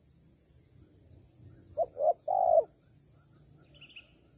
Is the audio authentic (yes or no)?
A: yes